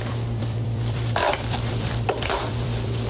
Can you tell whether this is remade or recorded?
remade